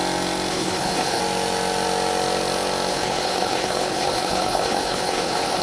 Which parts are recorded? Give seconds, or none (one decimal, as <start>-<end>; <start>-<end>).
0.0-0.5; 1.2-2.9